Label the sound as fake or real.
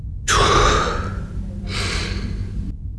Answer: real